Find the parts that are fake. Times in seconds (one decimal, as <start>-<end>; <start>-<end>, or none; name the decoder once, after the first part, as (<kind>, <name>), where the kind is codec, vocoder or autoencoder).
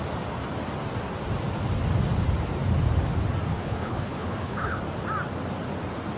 3.5-4.8 (codec, HILCodec)